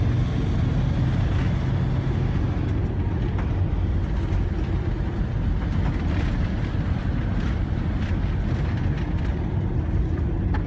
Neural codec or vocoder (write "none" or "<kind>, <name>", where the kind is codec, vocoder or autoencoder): none